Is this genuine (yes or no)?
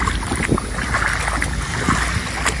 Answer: yes